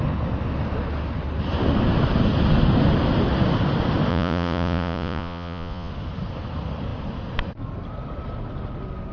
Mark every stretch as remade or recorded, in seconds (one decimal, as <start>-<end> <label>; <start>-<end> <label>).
0.0-4.1 recorded; 4.1-5.9 remade; 5.9-9.1 recorded